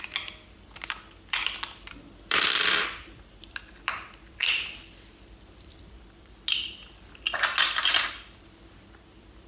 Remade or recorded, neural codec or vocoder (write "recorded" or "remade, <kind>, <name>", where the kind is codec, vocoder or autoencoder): remade, vocoder, BigVGAN v2